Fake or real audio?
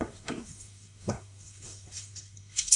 fake